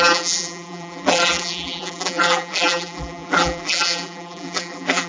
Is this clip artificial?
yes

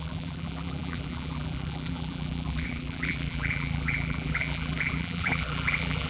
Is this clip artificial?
yes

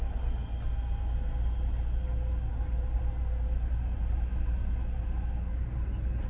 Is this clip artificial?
no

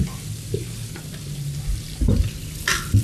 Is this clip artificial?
no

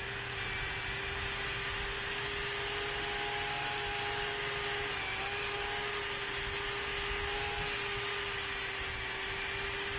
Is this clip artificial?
no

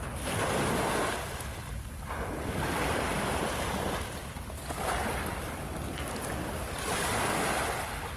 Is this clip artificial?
no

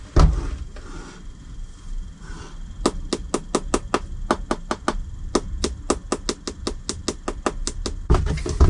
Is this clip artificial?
no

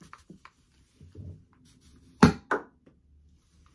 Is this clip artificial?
no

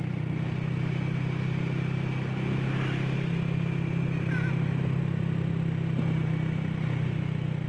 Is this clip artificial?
no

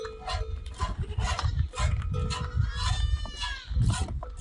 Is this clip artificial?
no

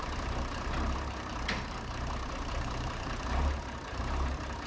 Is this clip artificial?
yes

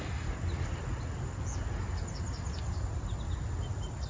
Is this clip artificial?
no